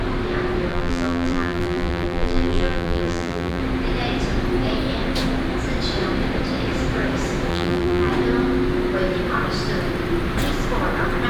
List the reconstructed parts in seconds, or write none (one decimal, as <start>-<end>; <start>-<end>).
0.7-3.6; 7.5-8.1